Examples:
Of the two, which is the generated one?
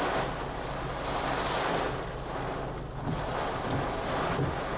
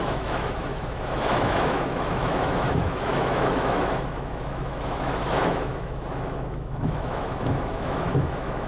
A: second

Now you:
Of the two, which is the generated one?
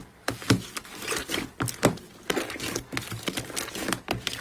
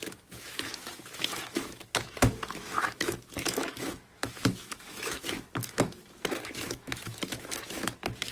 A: second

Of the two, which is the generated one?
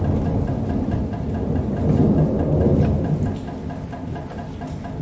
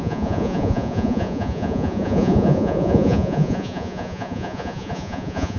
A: second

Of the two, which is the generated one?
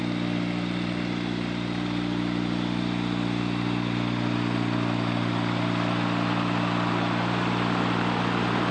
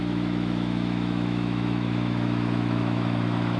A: second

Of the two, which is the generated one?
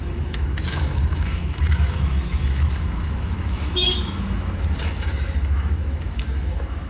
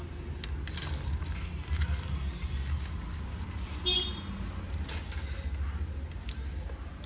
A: first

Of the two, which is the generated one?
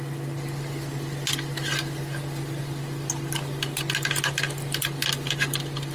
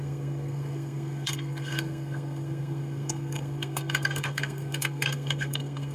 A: second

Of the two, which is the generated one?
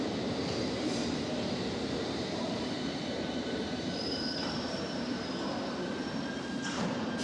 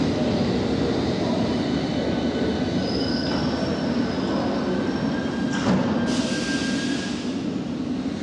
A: first